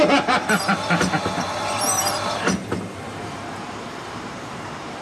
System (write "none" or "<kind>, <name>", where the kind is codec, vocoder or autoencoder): vocoder, BigVGAN v2